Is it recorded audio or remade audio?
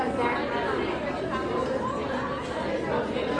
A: recorded